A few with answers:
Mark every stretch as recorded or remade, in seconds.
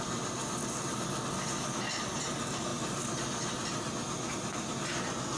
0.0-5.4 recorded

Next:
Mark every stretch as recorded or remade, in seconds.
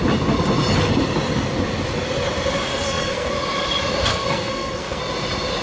0.0-2.7 recorded; 2.7-3.3 remade; 3.3-4.1 recorded; 4.1-5.0 remade; 5.0-5.6 recorded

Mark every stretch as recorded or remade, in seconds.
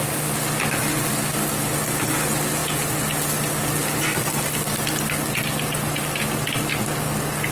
0.0-7.5 recorded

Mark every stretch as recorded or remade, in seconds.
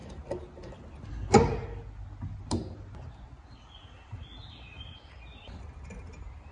0.0-6.5 recorded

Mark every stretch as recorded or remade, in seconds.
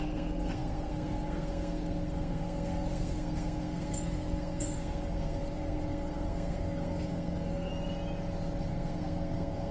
0.0-7.7 remade; 7.7-8.7 recorded; 8.7-9.7 remade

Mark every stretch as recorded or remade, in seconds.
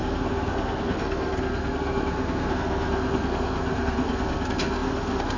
0.0-5.4 remade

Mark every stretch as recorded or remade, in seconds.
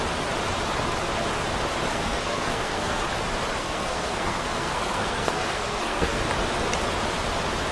0.0-1.9 recorded; 1.9-3.0 remade; 3.0-3.6 recorded; 3.6-6.2 remade; 6.2-7.7 recorded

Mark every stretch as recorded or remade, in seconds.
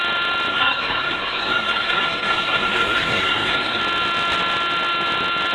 0.0-0.5 recorded; 0.5-3.8 remade; 3.8-5.5 recorded